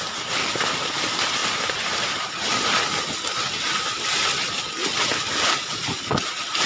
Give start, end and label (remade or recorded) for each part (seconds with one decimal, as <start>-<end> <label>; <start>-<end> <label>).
0.0-6.7 recorded